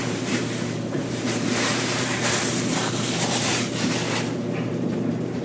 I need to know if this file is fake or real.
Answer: fake